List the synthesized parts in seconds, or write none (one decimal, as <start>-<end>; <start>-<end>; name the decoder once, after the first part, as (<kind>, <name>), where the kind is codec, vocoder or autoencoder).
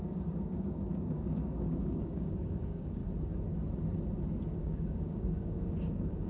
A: 0.0-3.0 (codec, DAC); 4.6-6.3